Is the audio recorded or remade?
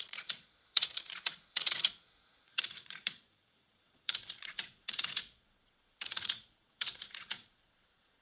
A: remade